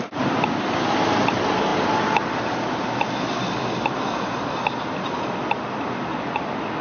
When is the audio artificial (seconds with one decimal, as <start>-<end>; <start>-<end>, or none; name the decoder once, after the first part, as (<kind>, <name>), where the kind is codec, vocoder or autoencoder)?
none